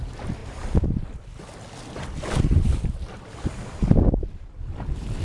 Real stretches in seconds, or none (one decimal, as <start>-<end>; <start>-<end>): 0.4-2.4